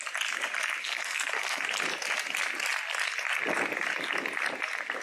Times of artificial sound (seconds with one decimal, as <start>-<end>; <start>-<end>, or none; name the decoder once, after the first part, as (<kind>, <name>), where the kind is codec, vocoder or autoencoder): 0.8-1.6 (codec, SNAC)